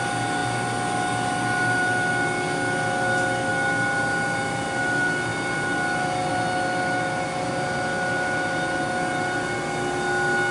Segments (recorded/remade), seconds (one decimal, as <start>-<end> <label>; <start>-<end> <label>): 0.0-10.5 recorded